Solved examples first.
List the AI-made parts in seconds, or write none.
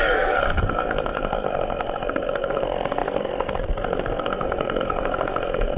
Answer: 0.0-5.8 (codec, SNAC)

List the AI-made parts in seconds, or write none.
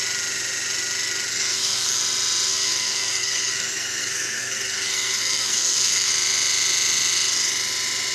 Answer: 1.3-2.0 (codec, SNAC); 2.5-6.1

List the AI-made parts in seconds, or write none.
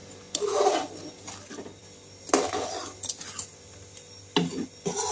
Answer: none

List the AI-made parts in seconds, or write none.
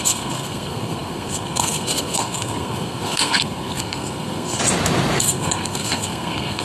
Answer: 0.0-4.6 (codec, SNAC); 5.2-6.6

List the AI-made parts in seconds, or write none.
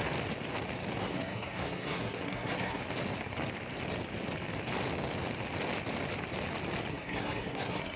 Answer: 1.0-2.8 (codec, SNAC); 6.9-8.0